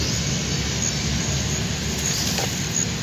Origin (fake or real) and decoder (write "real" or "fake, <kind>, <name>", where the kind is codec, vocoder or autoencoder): real